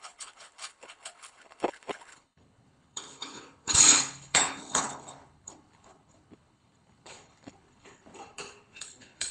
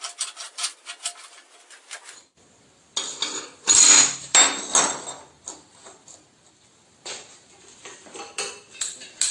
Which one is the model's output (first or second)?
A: first